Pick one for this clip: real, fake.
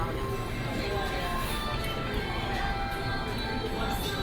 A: real